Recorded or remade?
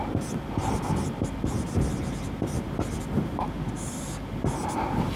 recorded